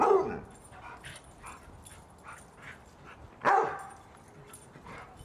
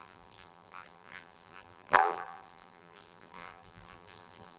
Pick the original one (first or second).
first